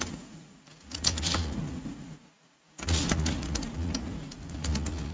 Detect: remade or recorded remade